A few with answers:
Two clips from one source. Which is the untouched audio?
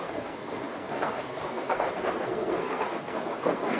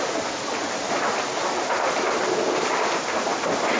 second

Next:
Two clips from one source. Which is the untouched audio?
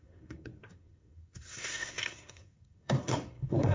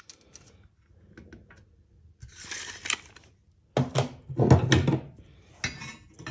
second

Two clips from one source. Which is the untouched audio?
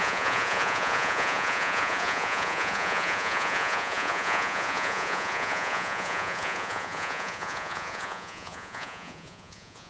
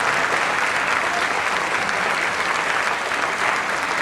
second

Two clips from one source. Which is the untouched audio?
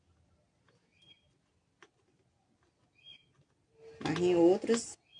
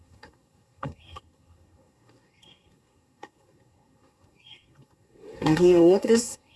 first